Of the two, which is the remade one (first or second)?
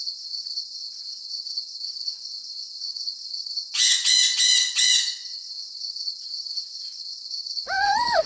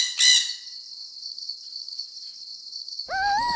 first